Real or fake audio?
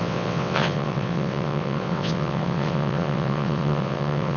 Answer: fake